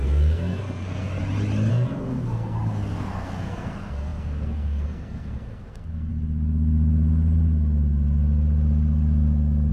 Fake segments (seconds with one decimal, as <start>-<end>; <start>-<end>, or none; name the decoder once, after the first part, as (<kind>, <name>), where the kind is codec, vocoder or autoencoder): 0.0-1.1 (codec, SNAC); 1.7-6.1